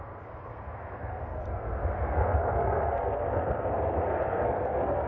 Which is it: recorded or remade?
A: remade